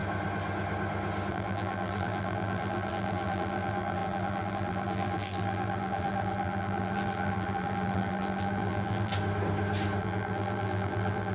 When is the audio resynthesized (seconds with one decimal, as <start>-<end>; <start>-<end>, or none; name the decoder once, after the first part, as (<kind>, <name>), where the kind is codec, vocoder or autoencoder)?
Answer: 1.3-9.1 (vocoder, BigVGAN v2); 10.0-11.3